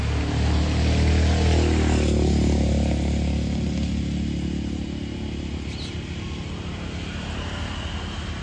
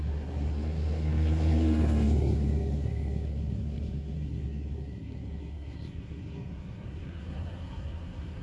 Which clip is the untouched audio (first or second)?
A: first